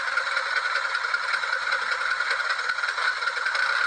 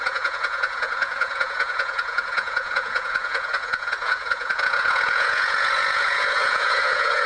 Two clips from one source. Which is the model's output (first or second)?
second